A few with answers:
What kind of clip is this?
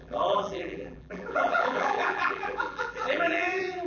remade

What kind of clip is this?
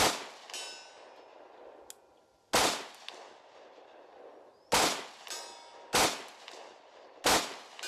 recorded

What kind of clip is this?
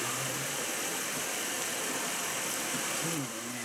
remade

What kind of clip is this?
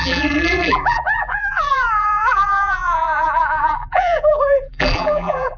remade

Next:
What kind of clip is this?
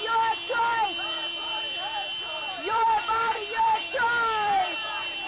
remade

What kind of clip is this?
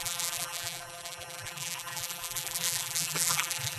remade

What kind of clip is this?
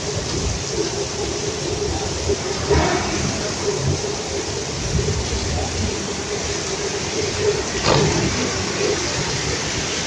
remade